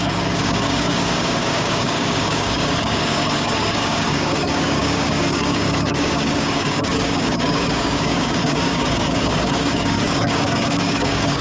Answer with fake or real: fake